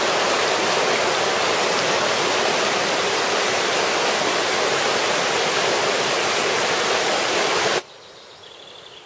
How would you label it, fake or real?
real